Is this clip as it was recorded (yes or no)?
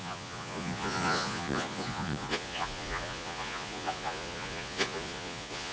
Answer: no